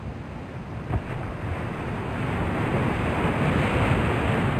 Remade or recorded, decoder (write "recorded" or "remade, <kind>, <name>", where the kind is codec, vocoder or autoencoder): recorded